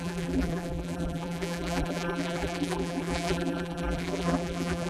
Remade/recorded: remade